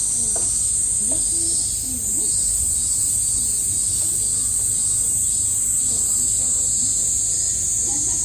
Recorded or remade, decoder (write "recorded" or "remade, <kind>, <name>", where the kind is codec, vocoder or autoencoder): recorded